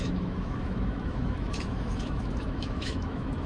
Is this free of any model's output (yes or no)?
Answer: no